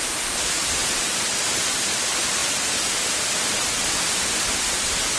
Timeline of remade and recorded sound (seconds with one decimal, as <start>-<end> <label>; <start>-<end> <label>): 0.0-0.8 remade; 0.8-1.7 recorded; 1.7-2.4 remade; 2.4-2.9 recorded; 2.9-5.2 remade